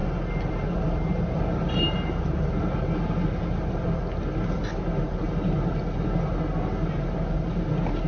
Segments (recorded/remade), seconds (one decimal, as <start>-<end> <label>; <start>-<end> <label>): 0.0-8.1 recorded